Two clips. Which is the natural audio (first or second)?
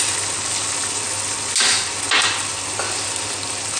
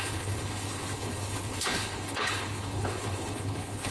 first